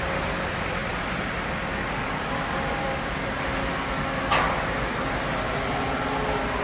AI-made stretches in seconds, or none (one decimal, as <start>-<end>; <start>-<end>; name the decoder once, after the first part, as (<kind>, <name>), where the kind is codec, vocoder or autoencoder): 0.8-3.3 (vocoder, BigVGAN v2)